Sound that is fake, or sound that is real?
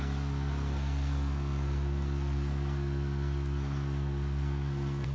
fake